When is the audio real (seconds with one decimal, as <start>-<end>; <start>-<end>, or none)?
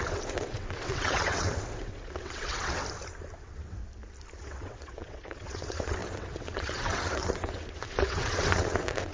2.8-3.4; 3.8-4.4